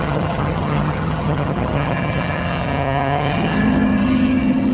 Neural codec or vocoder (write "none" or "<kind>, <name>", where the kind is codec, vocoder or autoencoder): vocoder, HiFi-GAN